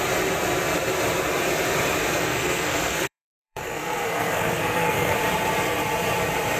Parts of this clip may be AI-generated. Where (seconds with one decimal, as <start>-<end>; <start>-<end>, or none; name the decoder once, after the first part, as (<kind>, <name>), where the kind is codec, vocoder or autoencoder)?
2.0-5.2 (codec, SNAC)